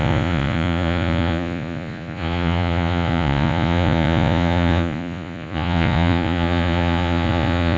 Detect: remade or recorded remade